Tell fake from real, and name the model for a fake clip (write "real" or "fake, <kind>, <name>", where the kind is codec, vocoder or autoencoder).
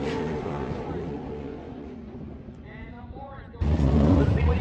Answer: fake, vocoder, Vocos